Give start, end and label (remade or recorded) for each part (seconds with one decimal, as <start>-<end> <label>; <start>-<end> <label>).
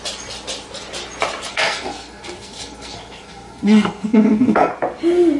0.0-1.5 recorded; 1.5-4.7 remade; 4.7-5.4 recorded